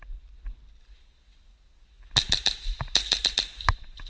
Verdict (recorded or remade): recorded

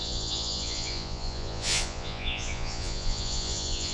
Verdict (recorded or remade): remade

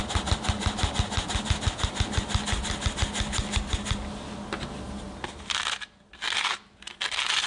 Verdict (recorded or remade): recorded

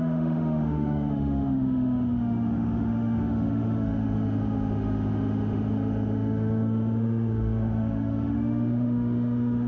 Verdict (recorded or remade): remade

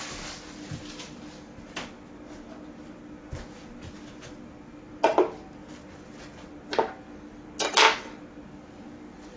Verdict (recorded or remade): recorded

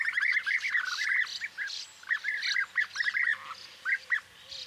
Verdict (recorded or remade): recorded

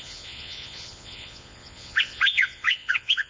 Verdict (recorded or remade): remade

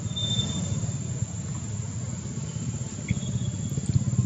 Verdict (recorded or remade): recorded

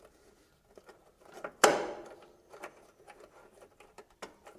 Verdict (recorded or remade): recorded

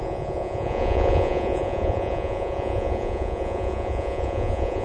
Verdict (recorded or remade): remade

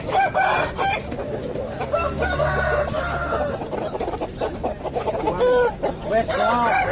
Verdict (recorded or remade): recorded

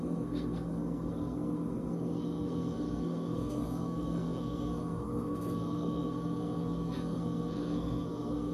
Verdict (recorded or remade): remade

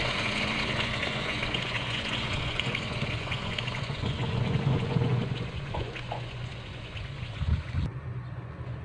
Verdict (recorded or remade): remade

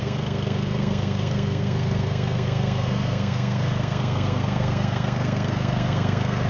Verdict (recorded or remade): remade